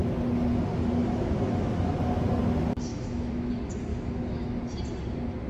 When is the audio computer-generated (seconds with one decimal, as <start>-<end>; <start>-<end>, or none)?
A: 1.0-1.9; 2.9-3.5; 3.9-4.6